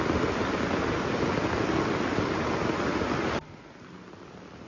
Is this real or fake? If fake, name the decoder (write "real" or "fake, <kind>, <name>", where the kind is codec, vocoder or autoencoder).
real